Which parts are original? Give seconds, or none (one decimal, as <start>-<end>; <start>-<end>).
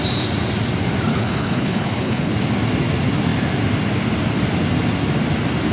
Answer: 0.0-1.1; 2.3-5.7